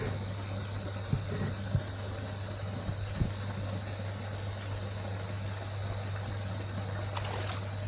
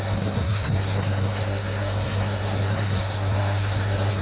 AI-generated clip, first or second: second